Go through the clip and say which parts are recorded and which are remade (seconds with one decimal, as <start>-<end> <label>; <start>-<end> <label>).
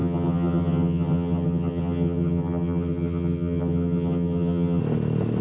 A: 0.0-4.8 remade; 4.8-5.4 recorded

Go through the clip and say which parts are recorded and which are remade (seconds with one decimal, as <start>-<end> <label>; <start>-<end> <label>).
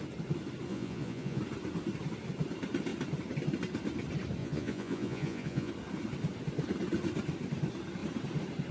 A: 0.0-0.7 recorded; 0.7-1.4 remade; 1.4-4.4 recorded; 4.4-5.7 remade; 5.7-8.7 recorded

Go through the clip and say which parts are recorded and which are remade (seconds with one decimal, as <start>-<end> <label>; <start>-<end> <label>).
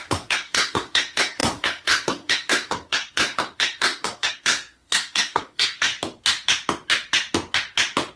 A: 0.0-5.9 remade; 5.9-8.2 recorded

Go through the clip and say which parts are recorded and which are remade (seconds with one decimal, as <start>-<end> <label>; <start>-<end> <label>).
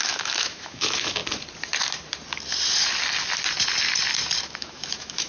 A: 0.0-1.2 remade; 1.2-4.4 recorded; 4.4-5.3 remade